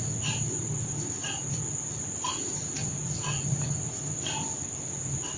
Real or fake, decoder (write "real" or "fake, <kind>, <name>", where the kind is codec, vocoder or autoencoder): real